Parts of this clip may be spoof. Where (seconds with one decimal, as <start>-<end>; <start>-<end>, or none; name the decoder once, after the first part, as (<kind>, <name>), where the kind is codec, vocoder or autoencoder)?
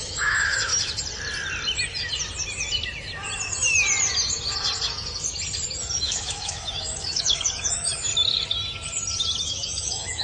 0.0-0.7 (autoencoder, DAC-VAE); 6.0-8.1; 9.4-10.2